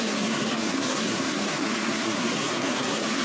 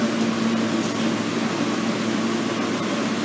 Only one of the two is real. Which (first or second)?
second